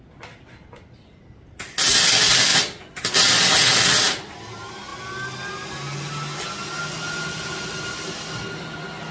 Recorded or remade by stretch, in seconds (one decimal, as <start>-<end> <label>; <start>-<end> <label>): 0.0-9.1 recorded